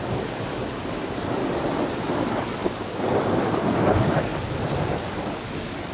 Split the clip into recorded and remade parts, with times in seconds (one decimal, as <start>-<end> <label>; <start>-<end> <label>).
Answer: 0.0-1.4 remade; 1.4-2.1 recorded; 2.1-5.9 remade